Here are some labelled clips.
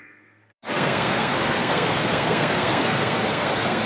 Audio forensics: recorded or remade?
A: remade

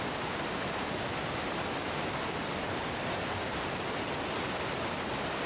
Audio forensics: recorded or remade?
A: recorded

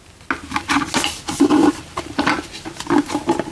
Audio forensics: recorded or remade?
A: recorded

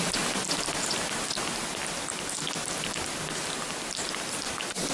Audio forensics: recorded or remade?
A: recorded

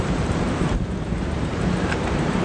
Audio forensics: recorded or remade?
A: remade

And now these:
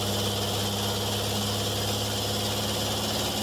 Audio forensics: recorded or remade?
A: recorded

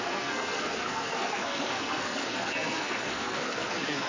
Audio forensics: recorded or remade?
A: remade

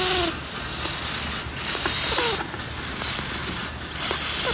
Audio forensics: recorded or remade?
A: recorded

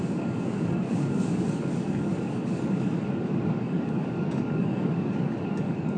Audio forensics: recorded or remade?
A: remade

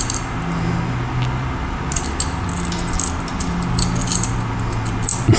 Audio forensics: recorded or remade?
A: recorded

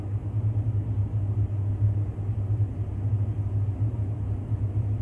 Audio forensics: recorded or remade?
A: recorded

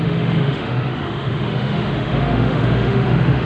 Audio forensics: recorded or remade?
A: remade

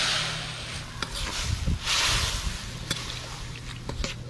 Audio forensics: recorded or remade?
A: recorded